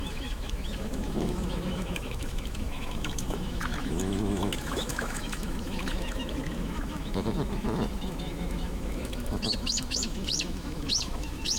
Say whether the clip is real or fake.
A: fake